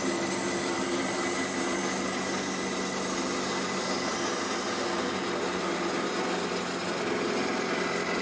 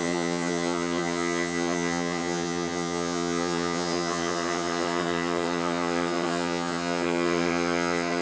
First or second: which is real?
first